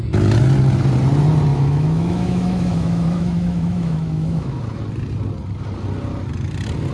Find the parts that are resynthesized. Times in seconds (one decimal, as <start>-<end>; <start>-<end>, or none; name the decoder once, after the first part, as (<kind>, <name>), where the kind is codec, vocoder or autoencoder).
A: 1.5-4.6 (autoencoder, DAC-VAE)